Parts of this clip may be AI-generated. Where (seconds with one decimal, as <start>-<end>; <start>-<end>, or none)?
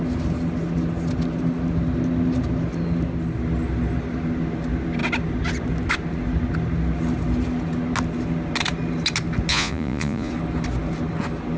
9.5-10.3